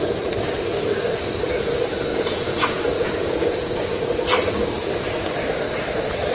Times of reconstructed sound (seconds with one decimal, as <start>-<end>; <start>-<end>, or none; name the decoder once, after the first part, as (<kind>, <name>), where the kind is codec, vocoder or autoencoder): 2.1-4.0 (vocoder, Vocos)